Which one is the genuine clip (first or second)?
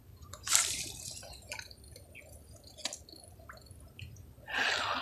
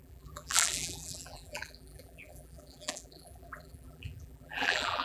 first